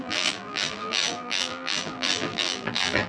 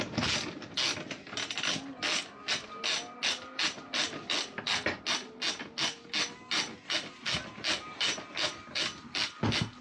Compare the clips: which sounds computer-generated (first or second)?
first